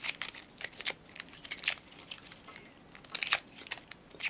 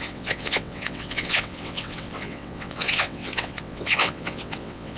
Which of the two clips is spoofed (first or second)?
second